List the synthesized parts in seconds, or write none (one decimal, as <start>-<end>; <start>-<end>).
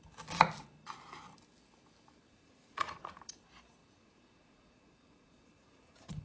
2.3-3.0; 3.8-6.2